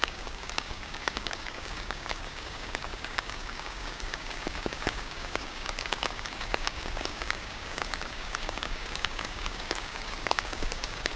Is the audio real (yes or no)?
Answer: no